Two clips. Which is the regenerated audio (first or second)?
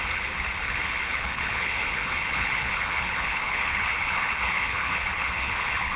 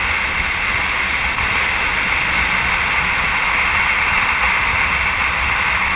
first